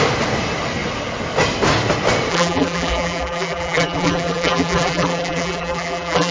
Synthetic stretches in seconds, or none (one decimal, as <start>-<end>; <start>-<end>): 2.3-6.3